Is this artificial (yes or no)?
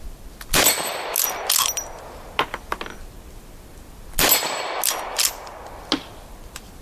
no